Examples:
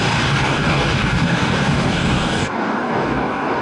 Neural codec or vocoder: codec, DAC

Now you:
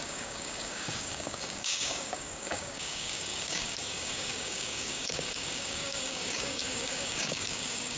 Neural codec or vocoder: codec, DAC